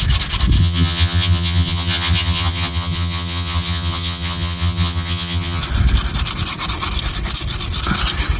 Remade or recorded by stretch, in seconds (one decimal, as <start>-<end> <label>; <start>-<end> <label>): 0.0-0.6 recorded; 0.6-5.6 remade; 5.6-8.4 recorded